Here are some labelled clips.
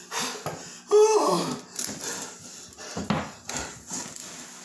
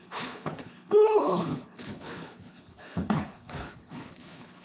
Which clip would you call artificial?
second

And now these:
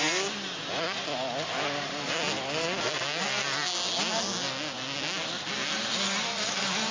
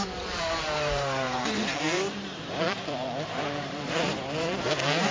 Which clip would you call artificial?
second